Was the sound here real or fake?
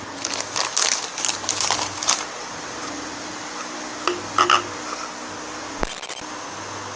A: real